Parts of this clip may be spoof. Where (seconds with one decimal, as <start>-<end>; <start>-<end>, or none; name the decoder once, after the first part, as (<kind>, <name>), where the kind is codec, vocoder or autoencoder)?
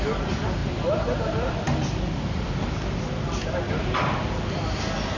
none